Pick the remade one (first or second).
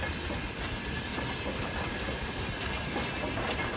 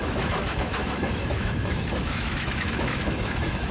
second